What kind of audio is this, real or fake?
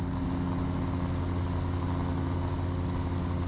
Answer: real